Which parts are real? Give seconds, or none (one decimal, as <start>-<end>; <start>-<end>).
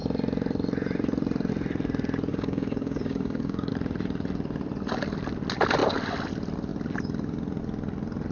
0.0-2.3; 3.7-8.3